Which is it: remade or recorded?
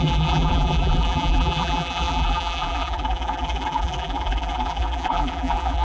remade